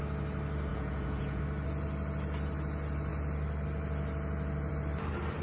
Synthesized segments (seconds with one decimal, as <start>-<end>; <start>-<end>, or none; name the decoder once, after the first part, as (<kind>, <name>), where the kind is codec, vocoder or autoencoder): 0.7-1.4 (vocoder, Vocos)